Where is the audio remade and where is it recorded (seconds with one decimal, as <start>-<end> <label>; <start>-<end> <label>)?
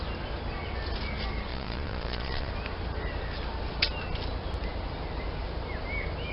0.0-1.5 recorded; 1.5-2.5 remade; 2.5-6.3 recorded